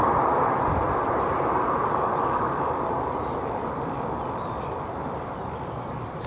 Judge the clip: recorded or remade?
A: remade